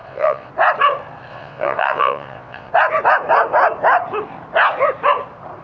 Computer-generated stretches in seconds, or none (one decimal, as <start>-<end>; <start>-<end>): 0.0-0.5; 1.3-2.7